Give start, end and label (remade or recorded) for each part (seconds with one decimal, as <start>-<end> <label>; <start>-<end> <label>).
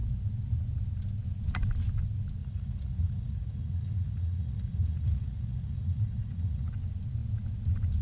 0.0-2.4 recorded; 2.4-6.7 remade; 6.7-8.0 recorded